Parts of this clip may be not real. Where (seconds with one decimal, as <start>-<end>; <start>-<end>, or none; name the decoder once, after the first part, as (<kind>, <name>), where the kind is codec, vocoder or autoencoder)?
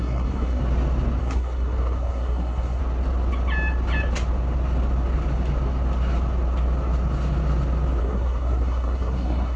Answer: 0.0-0.6 (codec, SNAC); 1.2-2.8; 8.0-9.6